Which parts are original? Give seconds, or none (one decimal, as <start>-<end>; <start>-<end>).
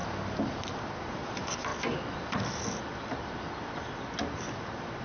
0.0-0.7; 1.7-4.2